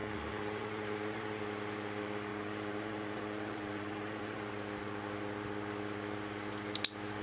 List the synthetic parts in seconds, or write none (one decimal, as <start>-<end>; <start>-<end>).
0.0-1.4; 2.3-4.5